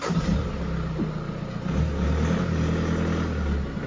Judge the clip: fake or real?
real